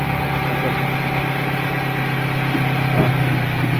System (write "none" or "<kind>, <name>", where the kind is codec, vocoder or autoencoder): none